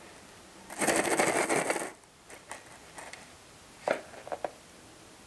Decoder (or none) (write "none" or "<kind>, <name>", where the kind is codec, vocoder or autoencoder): none